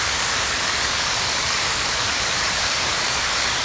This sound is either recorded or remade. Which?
remade